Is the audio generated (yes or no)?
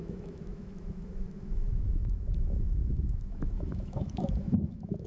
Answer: yes